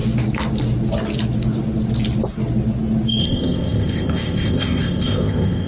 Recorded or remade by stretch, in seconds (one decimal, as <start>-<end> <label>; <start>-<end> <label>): 0.0-3.2 recorded; 3.2-5.7 remade